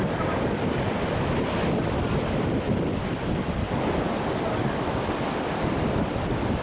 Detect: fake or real real